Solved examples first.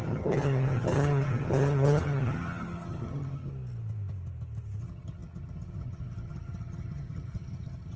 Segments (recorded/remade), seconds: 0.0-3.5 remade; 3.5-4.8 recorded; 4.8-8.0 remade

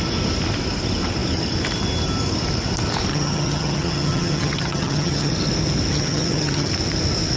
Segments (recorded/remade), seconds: 0.0-3.1 recorded; 3.1-5.3 remade; 5.3-5.9 recorded; 5.9-6.7 remade; 6.7-7.4 recorded

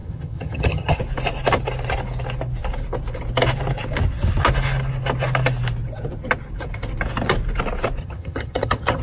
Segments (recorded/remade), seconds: 0.0-1.0 remade; 1.0-8.0 recorded; 8.0-9.0 remade

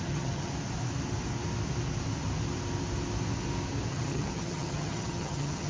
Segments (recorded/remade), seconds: 0.0-0.5 remade; 0.5-3.9 recorded; 3.9-5.7 remade

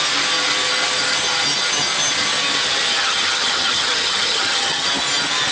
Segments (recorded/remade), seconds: 0.0-3.0 recorded; 3.0-4.9 remade; 4.9-5.5 recorded

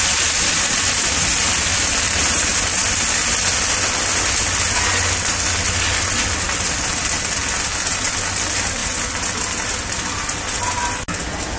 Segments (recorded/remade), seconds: 0.0-11.6 recorded